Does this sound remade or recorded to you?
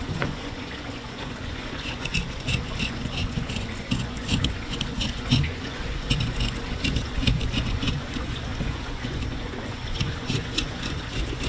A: remade